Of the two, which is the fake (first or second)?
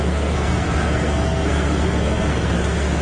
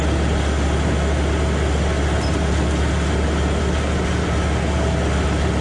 first